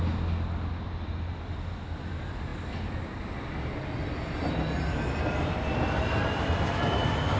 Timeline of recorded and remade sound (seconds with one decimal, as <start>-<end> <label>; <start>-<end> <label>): 0.0-7.4 recorded